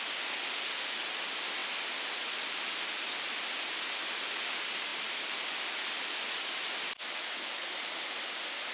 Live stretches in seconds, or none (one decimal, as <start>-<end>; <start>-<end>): 0.0-8.7

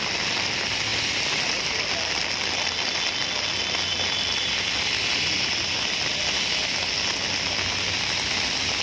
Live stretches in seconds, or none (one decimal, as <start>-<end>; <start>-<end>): 0.0-8.8

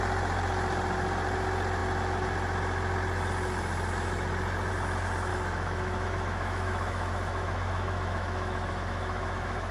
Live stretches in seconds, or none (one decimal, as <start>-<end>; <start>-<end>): 0.0-5.3

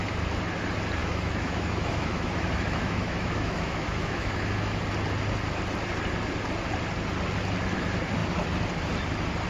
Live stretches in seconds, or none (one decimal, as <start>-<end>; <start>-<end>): 0.0-1.0; 4.8-9.5

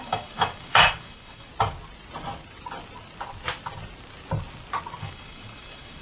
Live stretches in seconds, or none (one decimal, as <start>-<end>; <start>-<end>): 1.5-5.0